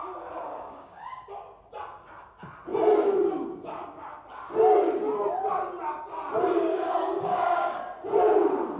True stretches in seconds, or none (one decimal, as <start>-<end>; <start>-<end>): 0.0-0.5; 1.3-6.7; 7.8-8.8

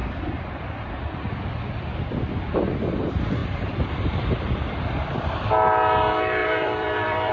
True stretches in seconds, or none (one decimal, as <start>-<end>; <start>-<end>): 0.9-3.4; 5.5-6.4